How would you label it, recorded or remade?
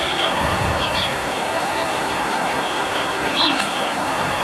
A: remade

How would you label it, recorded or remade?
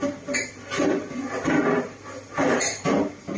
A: recorded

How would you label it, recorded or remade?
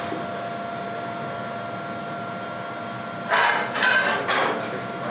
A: recorded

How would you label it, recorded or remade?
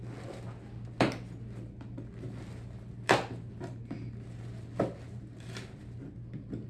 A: recorded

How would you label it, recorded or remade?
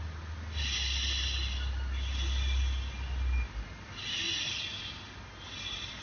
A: recorded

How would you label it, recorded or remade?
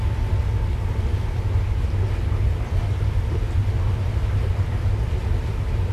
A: recorded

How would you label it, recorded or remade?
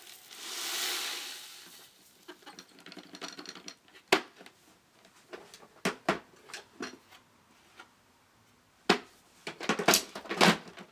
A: recorded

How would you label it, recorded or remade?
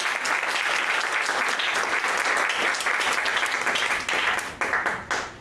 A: recorded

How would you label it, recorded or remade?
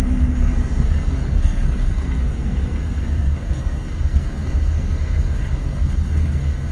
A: remade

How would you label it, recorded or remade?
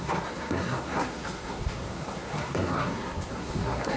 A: remade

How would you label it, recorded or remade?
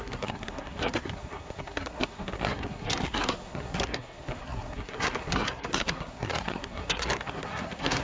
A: remade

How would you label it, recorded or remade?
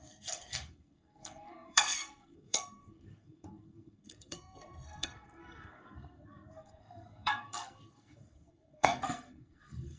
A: remade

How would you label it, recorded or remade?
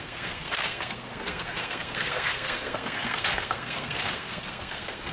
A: remade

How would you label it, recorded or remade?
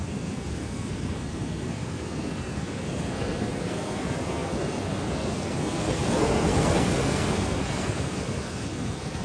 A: remade